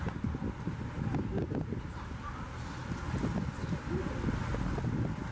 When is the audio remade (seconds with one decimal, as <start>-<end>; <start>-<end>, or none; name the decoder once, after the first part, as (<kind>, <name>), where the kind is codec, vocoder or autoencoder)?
2.8-3.9 (vocoder, BigVGAN v2)